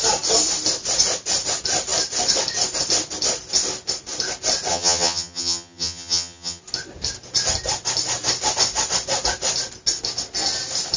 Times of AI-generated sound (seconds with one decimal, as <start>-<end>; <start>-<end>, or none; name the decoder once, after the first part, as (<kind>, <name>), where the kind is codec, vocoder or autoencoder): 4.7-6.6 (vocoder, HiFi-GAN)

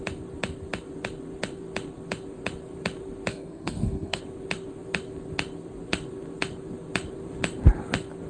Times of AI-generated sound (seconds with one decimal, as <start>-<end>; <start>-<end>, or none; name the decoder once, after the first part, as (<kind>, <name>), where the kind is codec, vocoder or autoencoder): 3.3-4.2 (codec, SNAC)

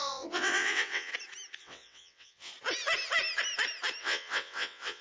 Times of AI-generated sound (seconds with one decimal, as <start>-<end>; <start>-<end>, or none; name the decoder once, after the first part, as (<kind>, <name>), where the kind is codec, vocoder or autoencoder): 0.0-1.1 (vocoder, WaveNeXt); 1.6-2.5; 4.0-5.0

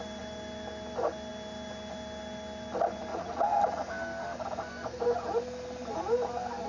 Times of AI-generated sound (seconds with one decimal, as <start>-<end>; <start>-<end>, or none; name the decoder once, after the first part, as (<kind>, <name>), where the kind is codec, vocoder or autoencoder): 3.1-3.8 (vocoder, Vocos)